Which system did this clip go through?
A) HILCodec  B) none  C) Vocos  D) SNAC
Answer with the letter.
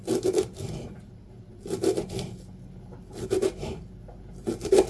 B